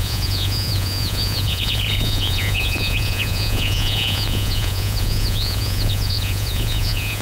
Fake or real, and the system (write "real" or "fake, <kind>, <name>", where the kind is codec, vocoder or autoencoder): fake, vocoder, Vocos